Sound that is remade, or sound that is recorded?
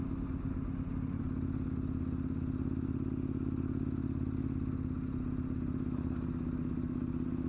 recorded